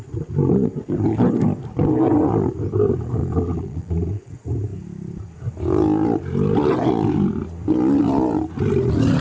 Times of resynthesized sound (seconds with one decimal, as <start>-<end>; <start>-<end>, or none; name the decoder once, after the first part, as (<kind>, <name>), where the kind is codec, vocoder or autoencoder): 3.2-4.3 (vocoder, Vocos)

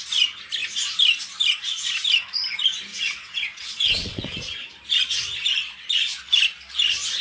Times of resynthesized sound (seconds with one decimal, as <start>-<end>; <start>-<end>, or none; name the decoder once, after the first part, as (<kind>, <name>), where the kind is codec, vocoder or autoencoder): 2.9-4.7 (vocoder, WaveNeXt)

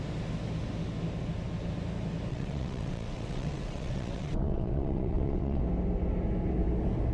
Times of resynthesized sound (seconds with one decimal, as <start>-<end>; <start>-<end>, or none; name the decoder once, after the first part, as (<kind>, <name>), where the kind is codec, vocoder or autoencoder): 2.3-5.6 (vocoder, WaveNeXt)